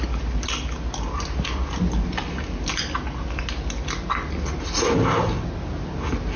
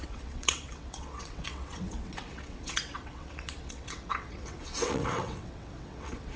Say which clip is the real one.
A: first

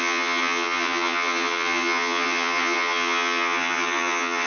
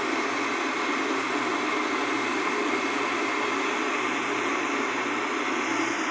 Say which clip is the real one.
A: second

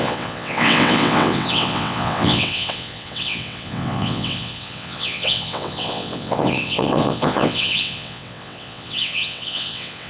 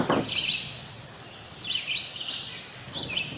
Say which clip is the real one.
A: second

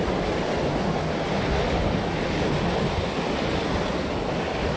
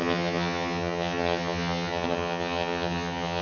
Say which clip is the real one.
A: first